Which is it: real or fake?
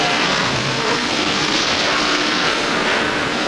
fake